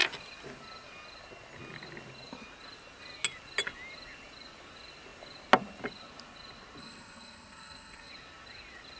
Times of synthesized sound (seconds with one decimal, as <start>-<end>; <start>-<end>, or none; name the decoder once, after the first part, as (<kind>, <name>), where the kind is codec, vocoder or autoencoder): 6.8-8.1 (codec, SNAC)